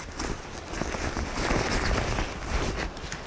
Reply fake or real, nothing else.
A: real